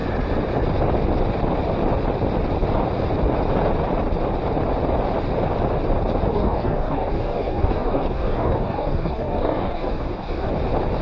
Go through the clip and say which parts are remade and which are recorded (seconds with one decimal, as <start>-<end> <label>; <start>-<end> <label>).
0.0-6.3 recorded; 6.3-10.5 remade; 10.5-11.0 recorded